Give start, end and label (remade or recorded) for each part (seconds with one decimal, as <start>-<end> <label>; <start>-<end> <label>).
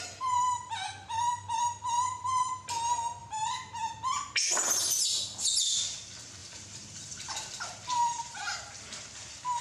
0.0-3.2 recorded; 3.2-3.7 remade; 3.7-6.4 recorded; 6.4-8.4 remade; 8.4-9.6 recorded